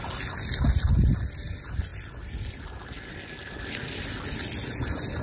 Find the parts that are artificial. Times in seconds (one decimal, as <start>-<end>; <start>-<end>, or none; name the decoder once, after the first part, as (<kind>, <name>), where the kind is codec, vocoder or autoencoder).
none